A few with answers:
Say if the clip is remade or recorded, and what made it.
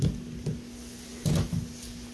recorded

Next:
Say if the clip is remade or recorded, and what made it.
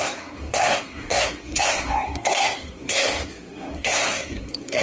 remade, codec, SNAC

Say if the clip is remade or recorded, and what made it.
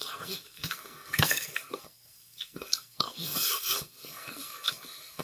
remade, codec, SNAC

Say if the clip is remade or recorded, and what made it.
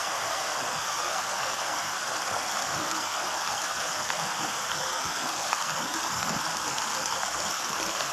remade, codec, SNAC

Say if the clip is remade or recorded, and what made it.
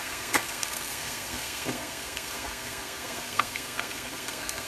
remade, codec, SNAC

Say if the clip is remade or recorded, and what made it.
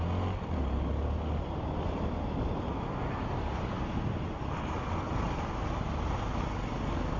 recorded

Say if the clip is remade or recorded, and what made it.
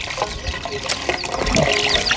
recorded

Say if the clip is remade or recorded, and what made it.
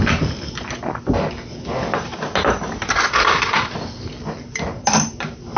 recorded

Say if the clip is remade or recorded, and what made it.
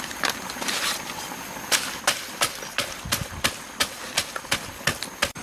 recorded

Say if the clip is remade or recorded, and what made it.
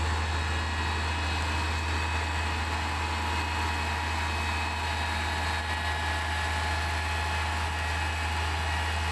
recorded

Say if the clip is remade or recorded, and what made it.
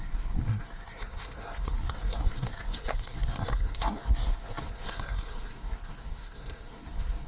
remade, codec, SNAC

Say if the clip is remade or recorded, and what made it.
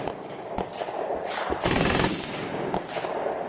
recorded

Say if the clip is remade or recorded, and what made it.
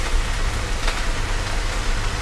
recorded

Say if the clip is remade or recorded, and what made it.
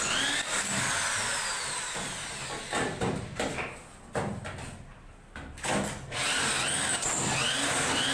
recorded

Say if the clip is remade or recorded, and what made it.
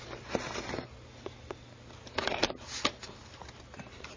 recorded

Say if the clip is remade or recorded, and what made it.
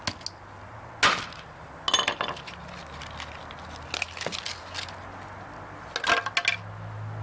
recorded